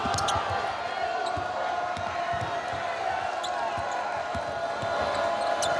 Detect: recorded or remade recorded